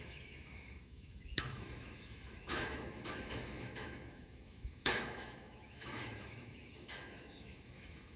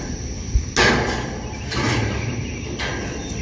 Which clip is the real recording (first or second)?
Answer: second